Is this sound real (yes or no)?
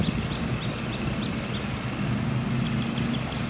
yes